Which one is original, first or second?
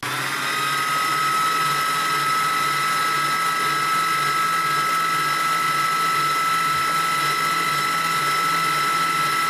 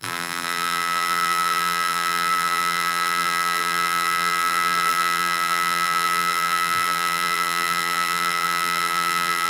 first